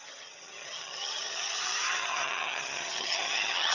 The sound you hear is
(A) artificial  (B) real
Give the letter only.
A